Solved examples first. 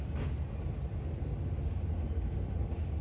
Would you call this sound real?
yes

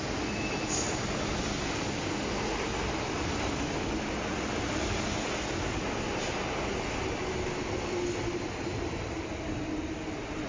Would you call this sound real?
yes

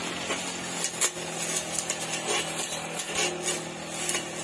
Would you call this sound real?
yes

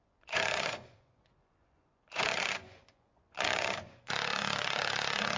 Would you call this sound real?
no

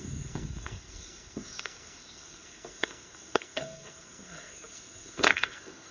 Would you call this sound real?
no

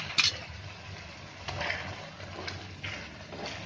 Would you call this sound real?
yes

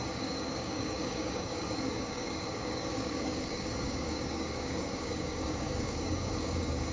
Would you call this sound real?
no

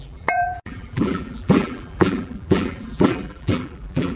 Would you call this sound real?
no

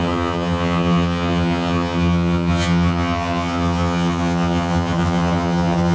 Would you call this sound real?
no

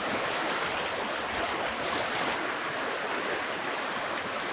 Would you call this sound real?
yes